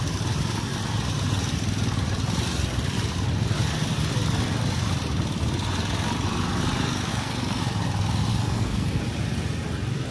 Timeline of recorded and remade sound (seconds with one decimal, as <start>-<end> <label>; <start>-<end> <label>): 0.0-7.1 recorded; 7.1-7.6 remade; 7.6-8.3 recorded; 8.3-9.0 remade; 9.0-10.1 recorded